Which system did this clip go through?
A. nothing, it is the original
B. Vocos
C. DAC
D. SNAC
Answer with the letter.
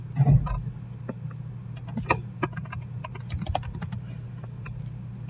A